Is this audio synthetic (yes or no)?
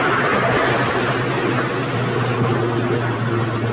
no